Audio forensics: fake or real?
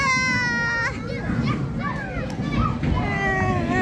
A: real